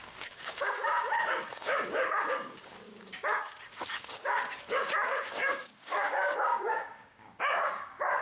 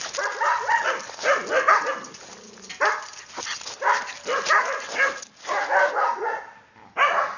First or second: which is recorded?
second